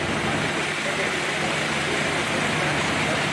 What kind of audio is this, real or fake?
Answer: real